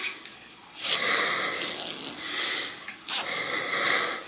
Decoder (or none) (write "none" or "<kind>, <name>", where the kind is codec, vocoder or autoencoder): none